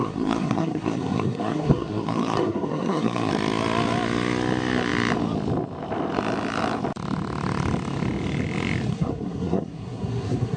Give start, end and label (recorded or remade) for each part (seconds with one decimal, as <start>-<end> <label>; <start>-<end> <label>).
0.0-3.3 remade; 3.3-8.9 recorded; 8.9-10.6 remade